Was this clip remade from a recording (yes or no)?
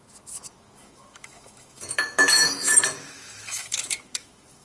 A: yes